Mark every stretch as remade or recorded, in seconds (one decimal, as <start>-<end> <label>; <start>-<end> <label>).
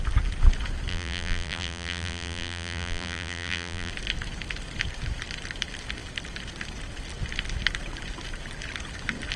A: 0.0-0.9 recorded; 0.9-3.9 remade; 3.9-9.4 recorded